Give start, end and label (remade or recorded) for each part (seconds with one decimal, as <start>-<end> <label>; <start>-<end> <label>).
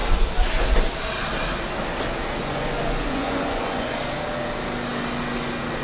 0.0-2.4 recorded; 2.4-4.0 remade; 4.0-5.8 recorded